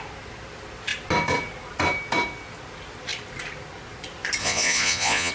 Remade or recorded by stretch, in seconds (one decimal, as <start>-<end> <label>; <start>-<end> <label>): 0.0-4.4 recorded; 4.4-5.3 remade